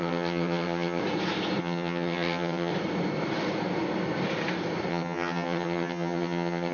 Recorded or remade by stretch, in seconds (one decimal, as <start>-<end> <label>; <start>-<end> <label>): 0.0-1.0 remade; 1.0-1.6 recorded; 1.6-2.7 remade; 2.7-4.9 recorded; 4.9-6.7 remade